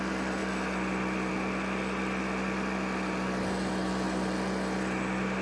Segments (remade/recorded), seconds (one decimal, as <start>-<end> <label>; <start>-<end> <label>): 0.0-5.4 recorded